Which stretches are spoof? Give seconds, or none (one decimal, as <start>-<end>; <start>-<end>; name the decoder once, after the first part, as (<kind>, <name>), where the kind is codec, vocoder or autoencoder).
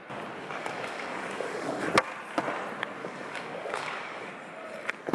0.4-1.8 (codec, DAC); 3.0-4.3